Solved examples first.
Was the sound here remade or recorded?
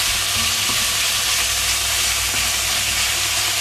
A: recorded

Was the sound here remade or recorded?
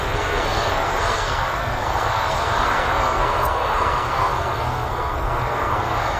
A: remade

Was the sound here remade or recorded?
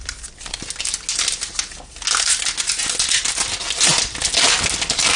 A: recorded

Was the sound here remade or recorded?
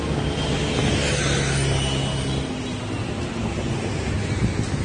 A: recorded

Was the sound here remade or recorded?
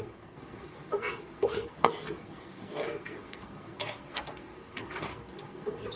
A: remade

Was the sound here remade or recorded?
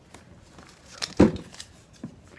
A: recorded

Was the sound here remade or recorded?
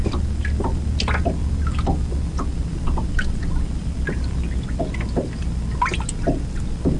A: recorded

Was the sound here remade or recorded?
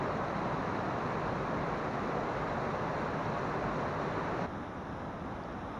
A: recorded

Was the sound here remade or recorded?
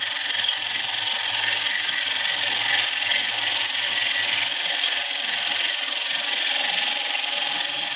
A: recorded